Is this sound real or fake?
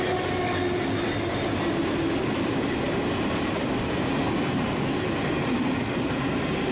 real